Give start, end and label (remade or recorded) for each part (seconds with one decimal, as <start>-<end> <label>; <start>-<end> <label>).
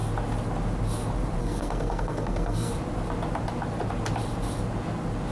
0.0-1.4 recorded; 1.4-2.7 remade; 2.7-5.3 recorded